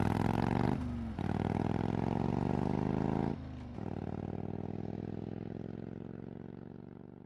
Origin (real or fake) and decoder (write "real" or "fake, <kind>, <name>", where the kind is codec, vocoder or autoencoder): real